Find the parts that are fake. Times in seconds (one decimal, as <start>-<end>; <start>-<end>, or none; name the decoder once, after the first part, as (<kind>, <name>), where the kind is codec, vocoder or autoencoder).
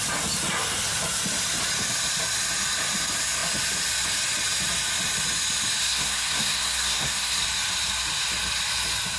5.8-7.4 (codec, SNAC)